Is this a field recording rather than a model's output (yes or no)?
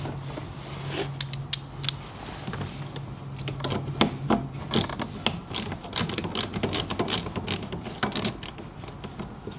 yes